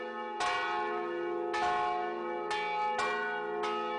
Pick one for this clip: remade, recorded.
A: recorded